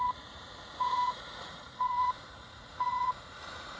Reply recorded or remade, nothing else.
remade